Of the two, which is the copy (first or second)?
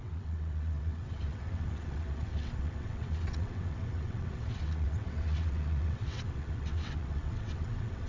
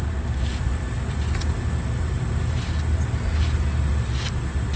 first